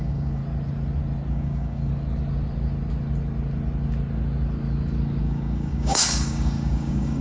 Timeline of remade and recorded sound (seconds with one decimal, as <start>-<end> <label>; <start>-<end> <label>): 0.0-0.4 remade; 0.4-1.3 recorded; 1.3-1.9 remade; 1.9-5.2 recorded; 5.2-7.2 remade